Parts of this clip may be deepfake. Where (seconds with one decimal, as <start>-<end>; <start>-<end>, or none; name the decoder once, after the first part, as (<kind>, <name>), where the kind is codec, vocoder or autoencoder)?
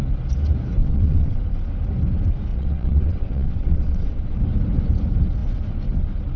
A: 0.8-1.4 (vocoder, WaveNeXt); 2.5-4.4